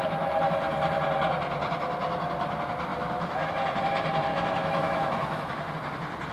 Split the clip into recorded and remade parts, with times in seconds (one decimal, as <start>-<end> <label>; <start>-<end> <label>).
0.0-2.9 recorded; 2.9-3.5 remade; 3.5-4.3 recorded; 4.3-5.7 remade; 5.7-6.3 recorded